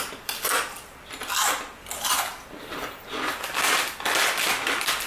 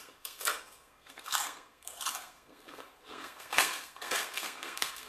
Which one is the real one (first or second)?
first